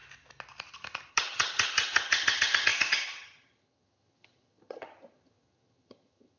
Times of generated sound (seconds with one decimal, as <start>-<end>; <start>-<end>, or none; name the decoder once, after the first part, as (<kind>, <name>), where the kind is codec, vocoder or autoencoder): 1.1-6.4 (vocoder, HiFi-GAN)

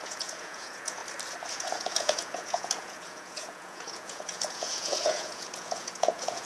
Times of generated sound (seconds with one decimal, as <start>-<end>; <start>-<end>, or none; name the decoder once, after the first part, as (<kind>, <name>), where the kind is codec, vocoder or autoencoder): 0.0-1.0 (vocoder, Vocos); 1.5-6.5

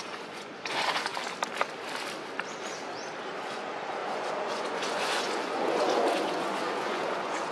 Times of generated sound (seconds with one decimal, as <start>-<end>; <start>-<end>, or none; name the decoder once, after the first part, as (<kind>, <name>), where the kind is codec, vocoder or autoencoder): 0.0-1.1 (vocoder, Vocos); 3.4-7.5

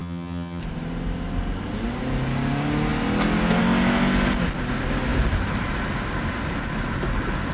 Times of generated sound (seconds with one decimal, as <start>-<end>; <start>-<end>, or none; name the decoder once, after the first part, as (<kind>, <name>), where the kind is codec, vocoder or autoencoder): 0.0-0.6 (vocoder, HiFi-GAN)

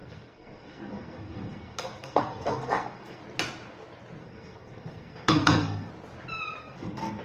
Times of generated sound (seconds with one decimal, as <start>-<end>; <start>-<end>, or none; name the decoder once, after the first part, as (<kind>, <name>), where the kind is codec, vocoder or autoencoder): 0.0-3.2 (codec, SNAC); 4.2-5.9; 6.6-7.2

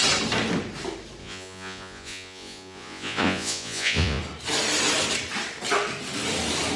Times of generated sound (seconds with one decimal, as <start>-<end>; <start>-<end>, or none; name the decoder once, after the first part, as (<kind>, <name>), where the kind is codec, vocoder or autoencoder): 1.2-4.2 (vocoder, Vocos)

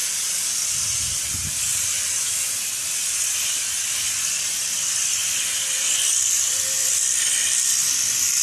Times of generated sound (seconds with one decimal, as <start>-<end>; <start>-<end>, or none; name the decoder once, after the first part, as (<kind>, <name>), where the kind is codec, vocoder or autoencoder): 0.0-4.3 (vocoder, BigVGAN v2)